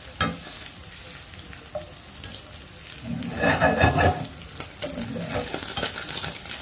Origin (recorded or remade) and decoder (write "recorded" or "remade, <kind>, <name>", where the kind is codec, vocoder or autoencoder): recorded